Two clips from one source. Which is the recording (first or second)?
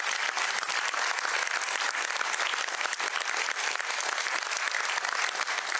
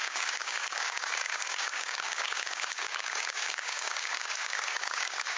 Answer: first